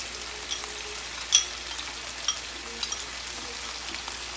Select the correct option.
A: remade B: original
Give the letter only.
B